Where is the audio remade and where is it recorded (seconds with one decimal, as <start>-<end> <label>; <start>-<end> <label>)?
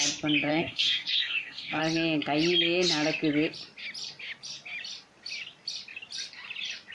0.0-0.5 recorded; 0.5-1.8 remade; 1.8-6.9 recorded